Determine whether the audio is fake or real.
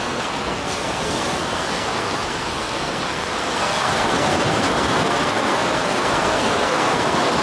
fake